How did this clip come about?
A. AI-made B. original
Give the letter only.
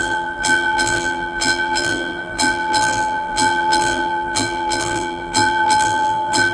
A